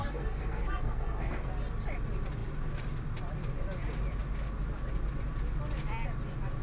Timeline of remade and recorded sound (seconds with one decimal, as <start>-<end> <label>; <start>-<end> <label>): 0.0-1.5 remade; 1.5-6.6 recorded